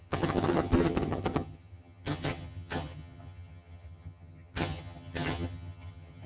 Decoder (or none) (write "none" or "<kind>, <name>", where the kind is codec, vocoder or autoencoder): vocoder, HiFi-GAN